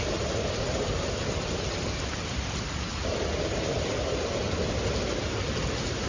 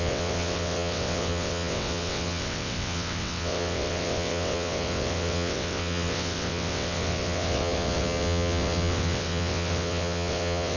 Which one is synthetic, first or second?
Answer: second